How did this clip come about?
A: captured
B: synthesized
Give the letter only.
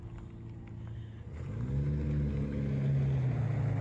A